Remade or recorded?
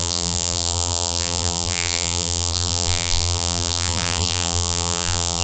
remade